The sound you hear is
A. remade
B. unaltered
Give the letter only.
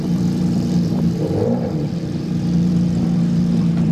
A